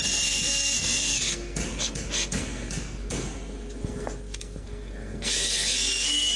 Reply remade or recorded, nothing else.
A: remade